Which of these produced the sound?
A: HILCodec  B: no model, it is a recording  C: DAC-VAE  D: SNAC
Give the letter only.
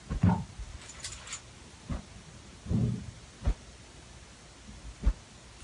B